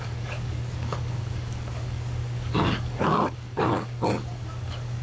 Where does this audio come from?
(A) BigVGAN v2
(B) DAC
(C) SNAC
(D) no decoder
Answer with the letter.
B